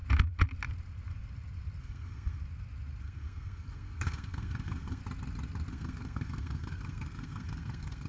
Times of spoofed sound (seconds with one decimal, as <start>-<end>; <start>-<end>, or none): 1.8-2.4; 3.0-5.0; 5.7-8.1